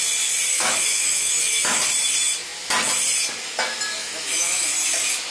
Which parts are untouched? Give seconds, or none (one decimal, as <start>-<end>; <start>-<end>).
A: 0.0-0.5; 1.8-4.0; 4.7-5.3